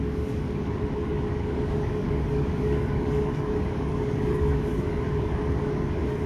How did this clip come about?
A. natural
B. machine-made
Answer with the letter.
B